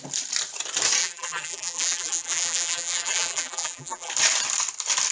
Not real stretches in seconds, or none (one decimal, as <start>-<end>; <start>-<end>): 1.0-4.1